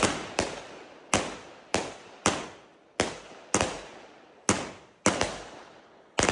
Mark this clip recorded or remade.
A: recorded